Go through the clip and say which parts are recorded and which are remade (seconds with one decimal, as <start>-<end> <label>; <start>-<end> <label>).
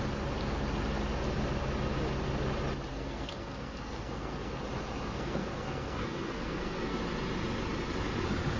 0.0-2.9 recorded; 2.9-4.6 remade; 4.6-5.1 recorded; 5.1-7.0 remade; 7.0-8.6 recorded